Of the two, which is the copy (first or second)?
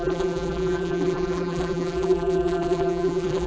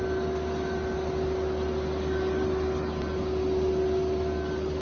first